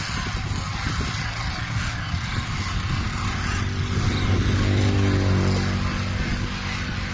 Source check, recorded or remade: recorded